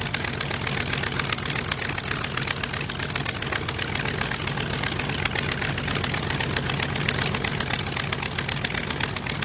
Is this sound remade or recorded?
recorded